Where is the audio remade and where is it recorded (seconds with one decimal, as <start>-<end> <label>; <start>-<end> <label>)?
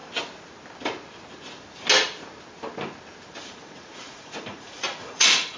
0.0-3.4 recorded; 3.4-5.6 remade